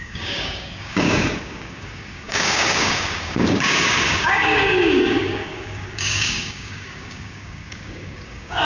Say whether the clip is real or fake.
fake